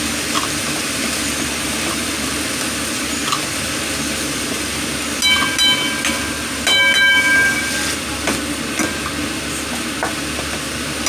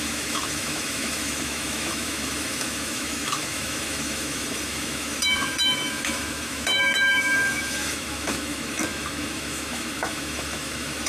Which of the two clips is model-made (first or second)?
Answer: second